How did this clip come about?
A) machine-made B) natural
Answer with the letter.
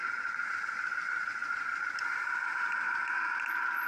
B